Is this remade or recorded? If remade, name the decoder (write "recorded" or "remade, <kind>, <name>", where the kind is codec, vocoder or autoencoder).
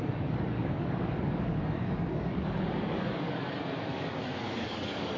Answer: remade, codec, DAC